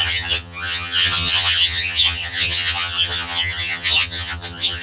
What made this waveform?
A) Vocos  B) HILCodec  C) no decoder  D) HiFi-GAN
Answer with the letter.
D